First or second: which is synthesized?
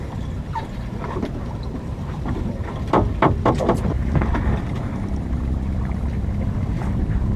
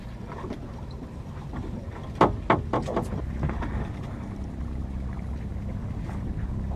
first